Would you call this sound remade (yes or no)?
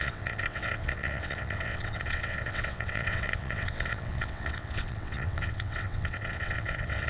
yes